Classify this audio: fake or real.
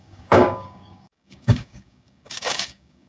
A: fake